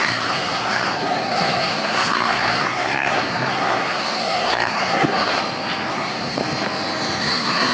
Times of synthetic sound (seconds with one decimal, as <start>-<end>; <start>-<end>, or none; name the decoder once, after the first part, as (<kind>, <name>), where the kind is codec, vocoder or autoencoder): 0.0-5.4 (codec, SNAC); 5.9-6.4; 7.2-7.7